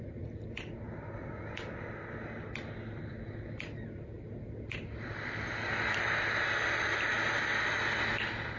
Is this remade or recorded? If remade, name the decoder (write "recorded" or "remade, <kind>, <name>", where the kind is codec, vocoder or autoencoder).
recorded